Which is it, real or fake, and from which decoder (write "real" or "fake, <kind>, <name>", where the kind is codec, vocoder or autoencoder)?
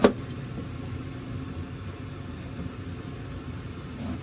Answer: real